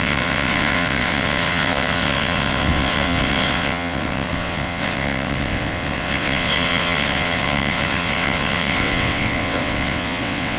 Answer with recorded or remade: remade